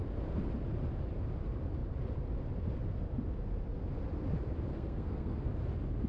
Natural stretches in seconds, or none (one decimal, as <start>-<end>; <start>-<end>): 0.0-4.7; 5.5-6.1

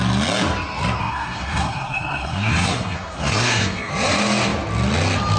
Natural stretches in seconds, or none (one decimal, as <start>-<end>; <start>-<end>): 0.0-1.0; 3.9-5.4

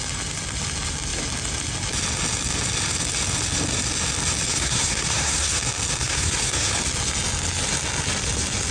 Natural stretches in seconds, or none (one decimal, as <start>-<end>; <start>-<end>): 0.0-4.5; 5.6-6.0; 6.7-8.7

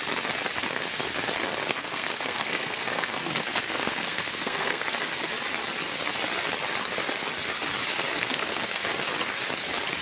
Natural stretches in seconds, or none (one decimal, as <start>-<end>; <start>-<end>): 0.0-1.7; 5.3-8.1; 8.8-10.0

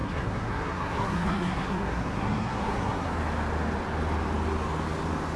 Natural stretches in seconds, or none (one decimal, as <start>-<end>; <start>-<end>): 3.2-5.4

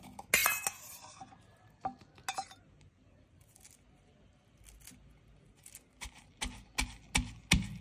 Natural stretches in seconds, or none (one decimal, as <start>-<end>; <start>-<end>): 0.0-7.8